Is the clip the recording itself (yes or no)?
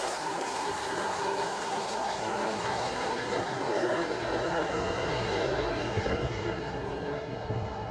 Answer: no